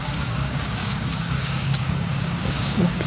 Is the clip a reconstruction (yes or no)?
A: yes